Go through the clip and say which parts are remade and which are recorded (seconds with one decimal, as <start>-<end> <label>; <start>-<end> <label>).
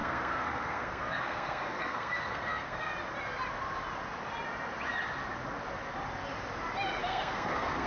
0.0-2.9 remade; 2.9-7.0 recorded; 7.0-7.9 remade